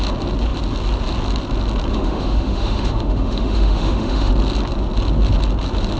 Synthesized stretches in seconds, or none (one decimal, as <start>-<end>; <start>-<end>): 1.9-4.3